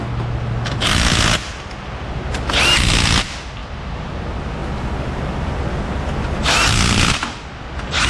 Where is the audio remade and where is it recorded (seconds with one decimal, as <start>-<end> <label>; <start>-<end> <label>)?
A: 0.0-3.6 recorded; 3.6-4.1 remade; 4.1-8.1 recorded